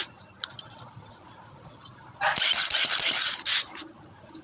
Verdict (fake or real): real